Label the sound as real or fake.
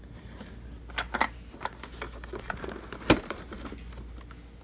real